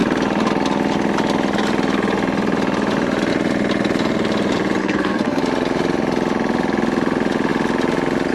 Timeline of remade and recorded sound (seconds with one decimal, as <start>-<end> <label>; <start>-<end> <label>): 0.0-4.8 recorded; 4.8-5.4 remade; 5.4-8.3 recorded